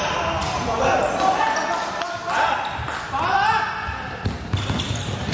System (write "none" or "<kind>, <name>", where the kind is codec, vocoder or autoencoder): none